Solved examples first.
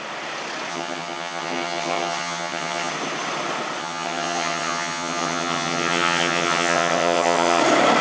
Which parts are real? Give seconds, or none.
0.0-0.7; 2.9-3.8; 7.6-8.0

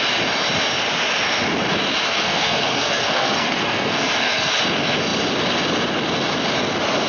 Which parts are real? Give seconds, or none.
0.0-2.1; 4.6-7.1